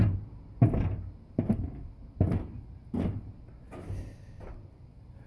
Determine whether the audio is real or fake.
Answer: real